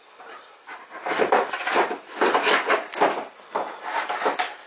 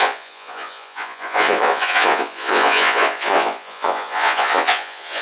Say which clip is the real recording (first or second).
first